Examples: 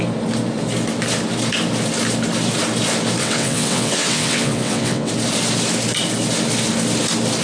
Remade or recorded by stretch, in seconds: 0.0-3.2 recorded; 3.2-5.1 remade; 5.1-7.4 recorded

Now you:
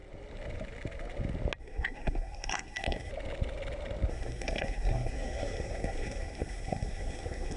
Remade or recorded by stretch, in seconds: 0.0-1.6 recorded; 1.6-3.1 remade; 3.1-4.1 recorded; 4.1-7.6 remade

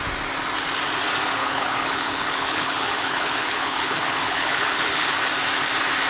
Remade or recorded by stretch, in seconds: 0.0-1.4 recorded; 1.4-5.1 remade; 5.1-6.1 recorded

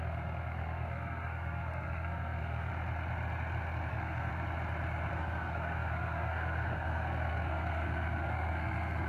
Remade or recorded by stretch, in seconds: 0.0-2.7 remade; 2.7-3.9 recorded; 3.9-4.3 remade; 4.3-5.1 recorded; 5.1-9.1 remade

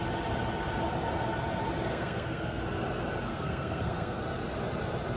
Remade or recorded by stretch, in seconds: 0.0-1.9 recorded; 1.9-2.6 remade; 2.6-3.3 recorded; 3.3-4.2 remade; 4.2-5.2 recorded